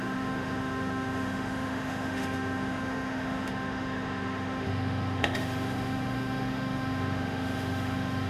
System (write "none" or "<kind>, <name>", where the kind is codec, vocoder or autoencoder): autoencoder, DAC-VAE